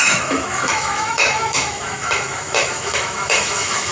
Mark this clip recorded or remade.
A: remade